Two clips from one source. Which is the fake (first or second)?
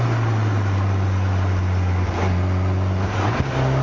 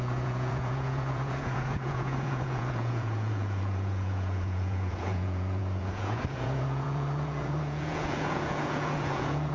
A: second